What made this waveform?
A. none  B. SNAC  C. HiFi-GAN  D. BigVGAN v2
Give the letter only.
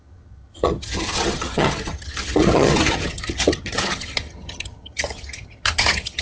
C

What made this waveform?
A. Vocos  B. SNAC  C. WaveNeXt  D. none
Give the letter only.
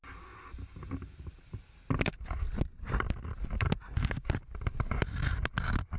D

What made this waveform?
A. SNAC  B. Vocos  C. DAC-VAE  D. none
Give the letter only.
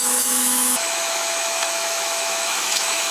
C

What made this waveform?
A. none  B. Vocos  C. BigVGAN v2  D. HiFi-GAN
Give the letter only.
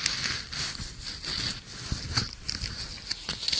A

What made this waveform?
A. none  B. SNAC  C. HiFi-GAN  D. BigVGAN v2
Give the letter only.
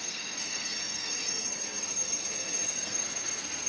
B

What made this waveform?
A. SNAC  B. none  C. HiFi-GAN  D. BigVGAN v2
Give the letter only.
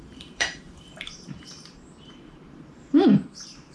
D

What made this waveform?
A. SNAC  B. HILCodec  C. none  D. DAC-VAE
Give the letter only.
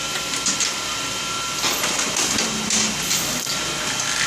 C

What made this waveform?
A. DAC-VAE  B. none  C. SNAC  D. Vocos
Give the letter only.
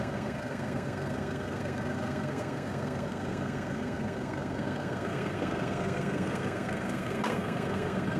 C